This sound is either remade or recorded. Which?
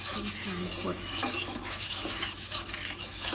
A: remade